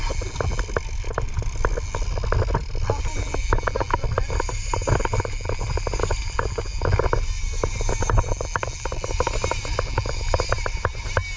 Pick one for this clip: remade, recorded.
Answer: recorded